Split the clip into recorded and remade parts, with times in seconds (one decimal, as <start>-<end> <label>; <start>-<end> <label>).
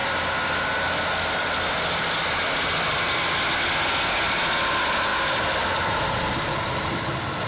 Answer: 0.0-7.5 recorded